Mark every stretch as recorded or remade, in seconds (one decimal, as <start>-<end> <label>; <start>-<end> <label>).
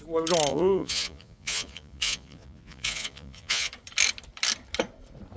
0.0-0.5 recorded; 0.5-3.7 remade; 3.7-5.4 recorded